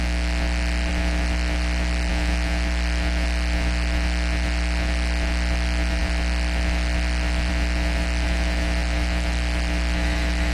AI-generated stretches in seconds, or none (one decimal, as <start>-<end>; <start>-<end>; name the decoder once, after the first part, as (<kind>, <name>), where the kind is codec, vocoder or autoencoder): 0.9-2.1 (vocoder, BigVGAN v2)